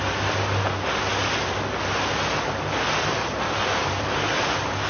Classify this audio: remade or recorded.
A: recorded